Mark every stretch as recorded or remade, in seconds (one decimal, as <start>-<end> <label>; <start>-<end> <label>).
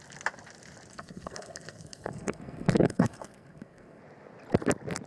0.0-0.9 recorded; 0.9-4.0 remade; 4.0-5.1 recorded